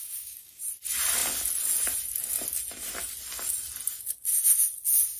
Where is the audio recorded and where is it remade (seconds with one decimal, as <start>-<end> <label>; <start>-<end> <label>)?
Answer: 0.0-0.6 remade; 0.6-5.2 recorded